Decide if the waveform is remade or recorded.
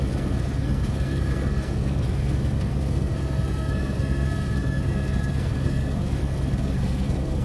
remade